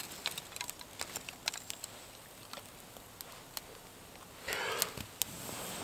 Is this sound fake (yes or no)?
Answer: no